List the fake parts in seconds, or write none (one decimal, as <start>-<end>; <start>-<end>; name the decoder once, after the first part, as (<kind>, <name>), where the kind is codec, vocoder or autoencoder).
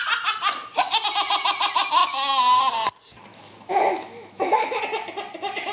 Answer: 2.0-2.6 (autoencoder, DAC-VAE); 3.3-4.8